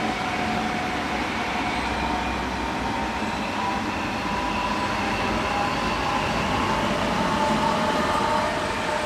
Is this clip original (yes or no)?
yes